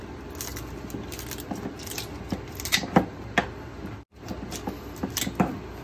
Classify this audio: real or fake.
real